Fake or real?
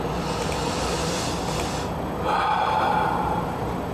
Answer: real